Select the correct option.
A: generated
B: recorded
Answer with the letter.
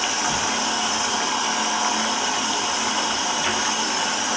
B